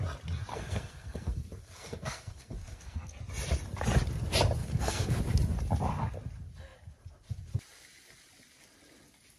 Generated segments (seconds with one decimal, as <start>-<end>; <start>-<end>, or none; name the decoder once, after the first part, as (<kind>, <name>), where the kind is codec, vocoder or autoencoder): 0.5-3.1 (codec, SNAC); 4.6-5.2

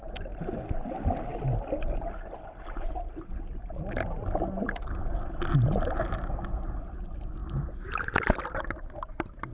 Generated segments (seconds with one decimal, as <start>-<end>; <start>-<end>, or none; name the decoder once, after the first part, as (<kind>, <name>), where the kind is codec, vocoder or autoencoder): none